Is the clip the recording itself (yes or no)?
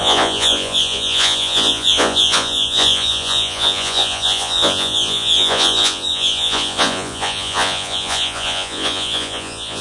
no